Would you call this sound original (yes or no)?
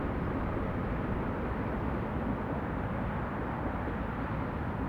no